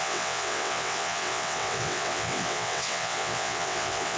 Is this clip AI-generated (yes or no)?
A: yes